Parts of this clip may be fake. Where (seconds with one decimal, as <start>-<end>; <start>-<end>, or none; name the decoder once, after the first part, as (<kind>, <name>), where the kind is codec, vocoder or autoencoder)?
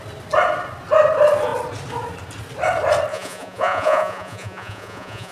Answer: 3.1-5.3 (vocoder, Vocos)